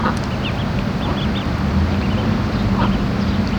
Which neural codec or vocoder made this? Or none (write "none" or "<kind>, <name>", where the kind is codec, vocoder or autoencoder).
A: none